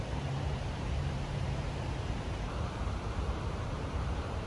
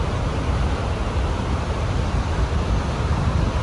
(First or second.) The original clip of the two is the second